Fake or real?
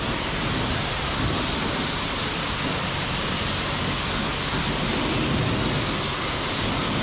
real